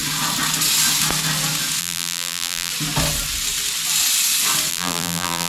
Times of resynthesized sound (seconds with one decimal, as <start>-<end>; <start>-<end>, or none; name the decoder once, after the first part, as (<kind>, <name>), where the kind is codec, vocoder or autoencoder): 1.8-2.7 (vocoder, BigVGAN v2); 4.7-5.5